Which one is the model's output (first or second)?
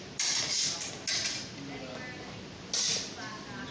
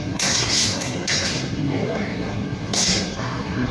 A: second